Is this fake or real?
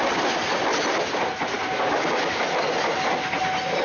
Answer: real